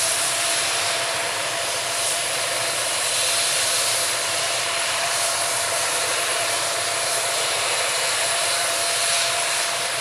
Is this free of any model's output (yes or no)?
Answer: no